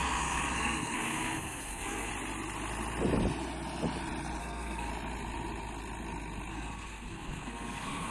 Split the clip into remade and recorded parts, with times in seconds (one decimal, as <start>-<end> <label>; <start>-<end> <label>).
0.0-2.1 remade; 2.1-4.4 recorded; 4.4-4.9 remade; 4.9-6.5 recorded; 6.5-8.1 remade